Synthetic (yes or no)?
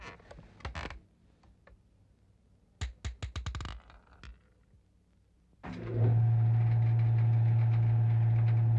no